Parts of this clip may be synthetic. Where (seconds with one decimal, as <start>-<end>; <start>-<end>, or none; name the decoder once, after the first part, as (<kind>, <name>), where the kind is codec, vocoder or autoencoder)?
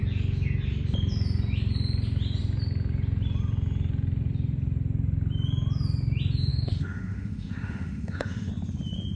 6.5-8.5 (autoencoder, DAC-VAE)